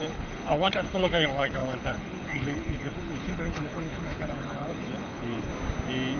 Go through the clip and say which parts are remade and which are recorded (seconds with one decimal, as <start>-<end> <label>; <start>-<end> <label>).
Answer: 0.0-5.5 remade; 5.5-6.2 recorded